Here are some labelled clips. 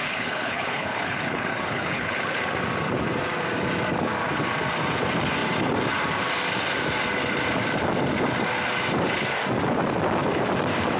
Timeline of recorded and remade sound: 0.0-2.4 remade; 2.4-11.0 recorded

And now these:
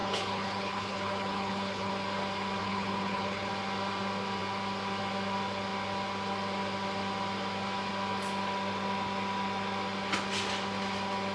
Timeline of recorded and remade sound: 0.0-1.9 remade; 1.9-2.6 recorded; 2.6-3.5 remade; 3.5-11.3 recorded

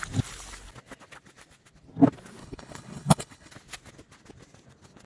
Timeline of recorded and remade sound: 0.0-2.4 recorded; 2.4-3.5 remade; 3.5-5.1 recorded

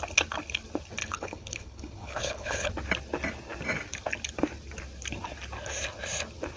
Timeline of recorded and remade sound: 0.0-1.0 recorded; 1.0-2.7 remade; 2.7-6.6 recorded

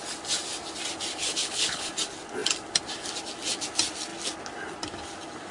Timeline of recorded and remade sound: 0.0-1.1 recorded; 1.1-1.9 remade; 1.9-5.5 recorded

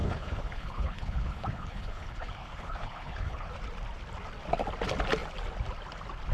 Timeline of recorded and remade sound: 0.0-3.5 remade; 3.5-6.3 recorded

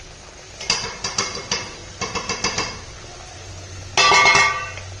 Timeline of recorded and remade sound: 0.0-5.0 recorded

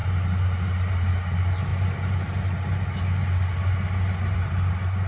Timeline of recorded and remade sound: 0.0-5.1 recorded